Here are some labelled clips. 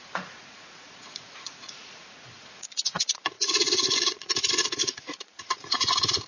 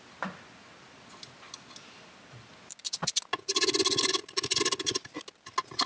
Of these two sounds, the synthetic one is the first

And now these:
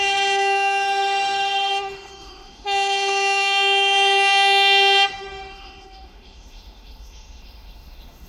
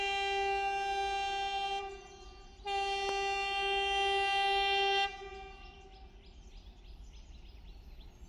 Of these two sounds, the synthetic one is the first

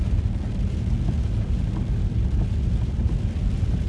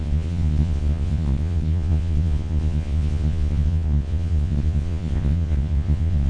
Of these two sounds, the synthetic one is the second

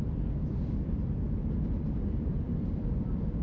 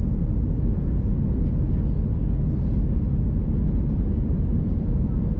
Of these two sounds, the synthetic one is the first